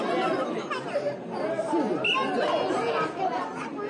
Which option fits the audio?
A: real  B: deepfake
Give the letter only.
A